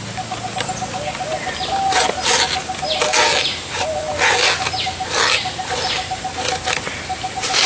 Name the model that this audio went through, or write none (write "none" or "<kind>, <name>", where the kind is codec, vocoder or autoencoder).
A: none